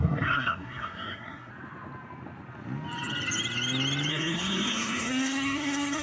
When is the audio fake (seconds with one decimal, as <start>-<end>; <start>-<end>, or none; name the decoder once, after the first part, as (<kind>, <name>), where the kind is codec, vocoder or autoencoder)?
0.0-1.5 (codec, SNAC); 4.1-6.0